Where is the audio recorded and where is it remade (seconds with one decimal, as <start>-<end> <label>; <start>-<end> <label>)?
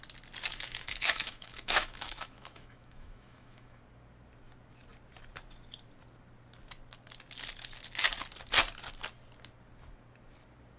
0.0-0.5 recorded; 0.5-3.8 remade; 3.8-10.8 recorded